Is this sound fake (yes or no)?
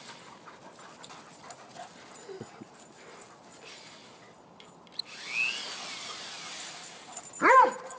no